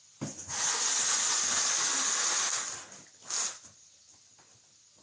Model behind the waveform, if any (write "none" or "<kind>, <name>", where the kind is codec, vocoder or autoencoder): none